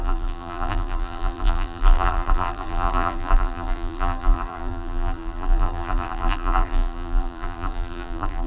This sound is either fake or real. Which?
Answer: fake